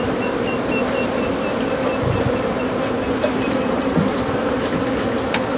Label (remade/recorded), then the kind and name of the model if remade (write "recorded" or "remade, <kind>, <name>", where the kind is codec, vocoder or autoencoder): recorded